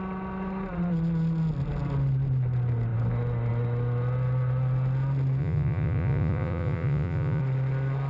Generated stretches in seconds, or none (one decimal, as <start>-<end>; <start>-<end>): 5.4-7.4